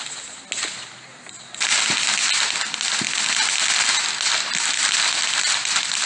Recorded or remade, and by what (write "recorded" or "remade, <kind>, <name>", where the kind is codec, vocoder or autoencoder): recorded